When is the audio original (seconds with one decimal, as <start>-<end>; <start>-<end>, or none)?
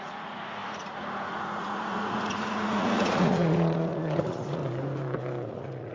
4.6-5.5